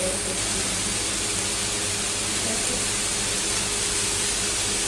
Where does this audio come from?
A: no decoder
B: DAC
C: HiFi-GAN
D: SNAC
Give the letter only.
A